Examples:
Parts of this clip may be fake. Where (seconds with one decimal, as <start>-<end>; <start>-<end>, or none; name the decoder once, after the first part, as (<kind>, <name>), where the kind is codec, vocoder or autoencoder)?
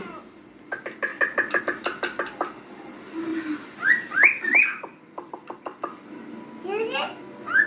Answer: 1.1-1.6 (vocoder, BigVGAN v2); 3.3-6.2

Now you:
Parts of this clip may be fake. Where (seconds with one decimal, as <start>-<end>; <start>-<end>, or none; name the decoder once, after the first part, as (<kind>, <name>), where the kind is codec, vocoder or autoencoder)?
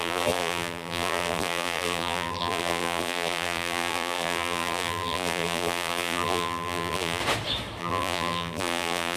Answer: 0.0-7.2 (vocoder, BigVGAN v2); 7.8-9.2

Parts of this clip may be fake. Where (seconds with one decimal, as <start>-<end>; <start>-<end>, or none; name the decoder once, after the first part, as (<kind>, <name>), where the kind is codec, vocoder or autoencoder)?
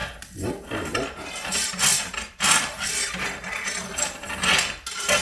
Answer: 1.9-4.3 (vocoder, BigVGAN v2)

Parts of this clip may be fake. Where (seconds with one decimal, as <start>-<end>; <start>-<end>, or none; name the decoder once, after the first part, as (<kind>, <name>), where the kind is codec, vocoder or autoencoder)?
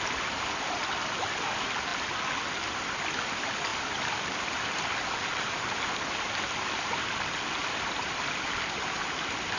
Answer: 0.0-7.6 (vocoder, BigVGAN v2)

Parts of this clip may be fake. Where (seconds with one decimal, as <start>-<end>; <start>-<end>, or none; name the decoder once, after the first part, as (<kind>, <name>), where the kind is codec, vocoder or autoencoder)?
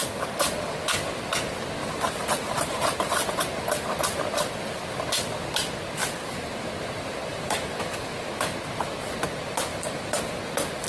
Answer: 1.8-3.3 (vocoder, BigVGAN v2); 6.0-6.7; 7.3-8.3; 9.7-10.2